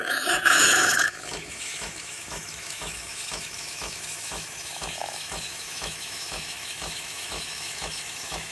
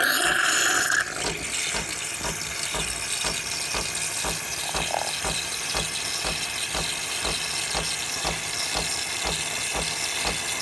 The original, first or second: second